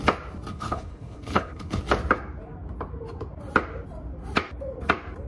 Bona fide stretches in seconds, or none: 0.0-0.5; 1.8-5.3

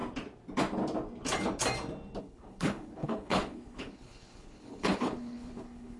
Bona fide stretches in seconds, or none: 0.0-2.2

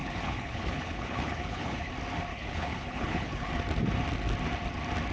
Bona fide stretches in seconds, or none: 1.9-2.3; 3.5-5.1

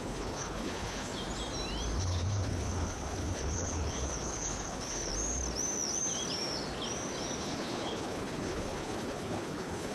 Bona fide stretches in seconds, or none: 1.1-2.0; 5.1-7.4

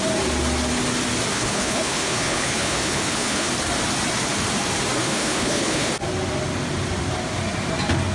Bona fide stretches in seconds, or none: 0.0-1.3; 3.5-5.0; 5.9-8.1